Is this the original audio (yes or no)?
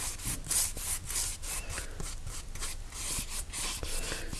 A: yes